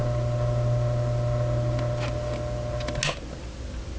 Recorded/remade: recorded